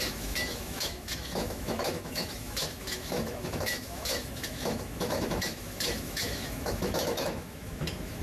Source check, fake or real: fake